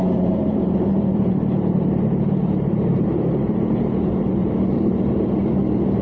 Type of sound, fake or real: fake